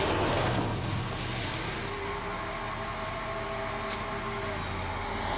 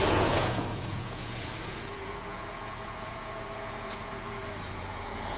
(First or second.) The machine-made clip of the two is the second